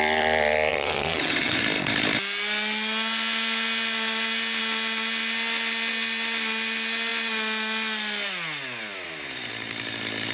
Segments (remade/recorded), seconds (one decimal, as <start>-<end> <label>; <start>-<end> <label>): 0.0-0.7 recorded; 0.7-1.6 remade; 1.6-10.3 recorded